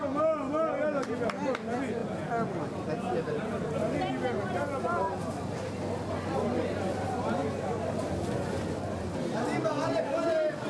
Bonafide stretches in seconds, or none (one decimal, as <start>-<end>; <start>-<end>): 0.0-10.7